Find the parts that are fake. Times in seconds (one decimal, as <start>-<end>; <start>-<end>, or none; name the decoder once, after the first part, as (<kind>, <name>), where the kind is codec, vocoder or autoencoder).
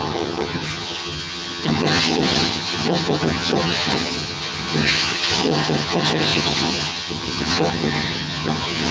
0.0-8.9 (vocoder, HiFi-GAN)